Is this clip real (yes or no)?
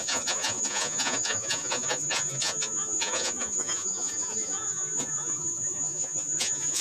no